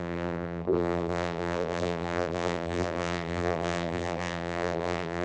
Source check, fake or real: fake